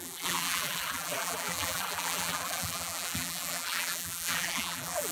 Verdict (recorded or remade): remade